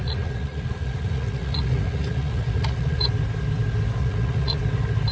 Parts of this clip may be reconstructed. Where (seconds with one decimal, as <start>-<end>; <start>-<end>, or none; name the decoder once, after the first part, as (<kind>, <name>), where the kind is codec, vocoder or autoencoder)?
0.0-3.1 (vocoder, Vocos); 4.0-4.6